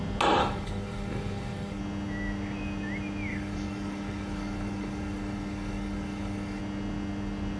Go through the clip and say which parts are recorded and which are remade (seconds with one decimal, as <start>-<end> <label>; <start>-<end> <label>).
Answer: 0.0-0.4 recorded; 0.4-1.8 remade; 1.8-3.3 recorded; 3.3-6.6 remade; 6.6-7.6 recorded